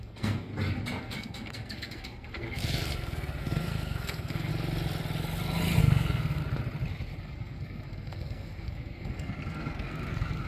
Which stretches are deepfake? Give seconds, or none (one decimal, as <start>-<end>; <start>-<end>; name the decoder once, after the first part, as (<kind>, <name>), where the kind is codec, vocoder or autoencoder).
0.0-0.5 (codec, SNAC); 1.0-4.5; 5.8-6.4; 7.2-10.5